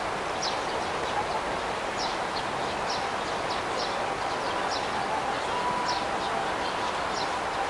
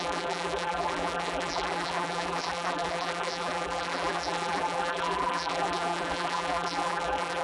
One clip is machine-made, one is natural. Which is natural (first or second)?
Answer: first